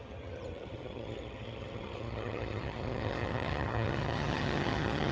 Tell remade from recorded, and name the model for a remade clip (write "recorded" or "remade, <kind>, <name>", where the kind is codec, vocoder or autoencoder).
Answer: remade, vocoder, HiFi-GAN